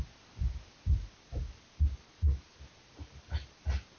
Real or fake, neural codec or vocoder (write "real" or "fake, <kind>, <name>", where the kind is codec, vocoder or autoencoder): real